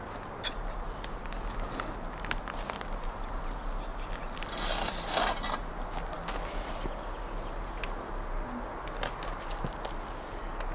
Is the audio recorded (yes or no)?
yes